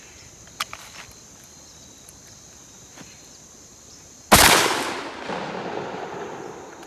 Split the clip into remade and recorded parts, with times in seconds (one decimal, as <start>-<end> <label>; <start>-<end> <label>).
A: 0.0-6.9 recorded